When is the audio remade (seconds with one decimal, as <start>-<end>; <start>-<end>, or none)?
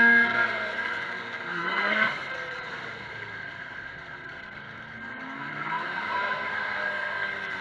0.0-7.6